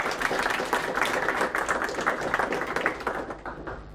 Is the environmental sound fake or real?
real